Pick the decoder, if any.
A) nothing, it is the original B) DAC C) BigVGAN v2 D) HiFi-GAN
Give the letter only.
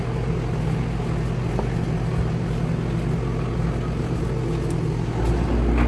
A